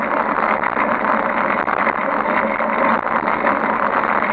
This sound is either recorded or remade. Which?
recorded